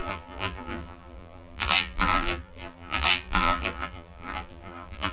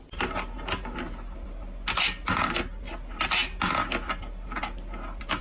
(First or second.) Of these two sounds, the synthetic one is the first